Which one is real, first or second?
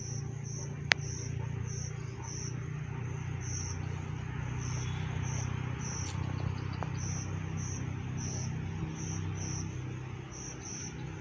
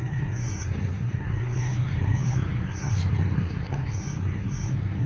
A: first